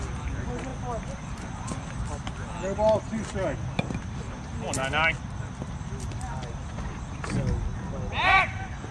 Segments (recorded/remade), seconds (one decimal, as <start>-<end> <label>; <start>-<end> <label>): 0.0-8.9 recorded